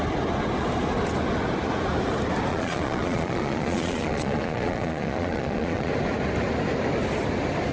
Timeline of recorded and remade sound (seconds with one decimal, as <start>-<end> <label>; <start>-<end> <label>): 0.0-2.5 recorded; 2.5-5.9 remade; 5.9-7.7 recorded